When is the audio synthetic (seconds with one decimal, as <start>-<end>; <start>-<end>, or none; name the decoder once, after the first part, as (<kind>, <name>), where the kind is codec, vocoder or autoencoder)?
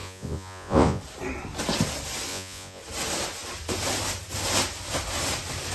0.0-1.0 (vocoder, Vocos); 2.3-2.8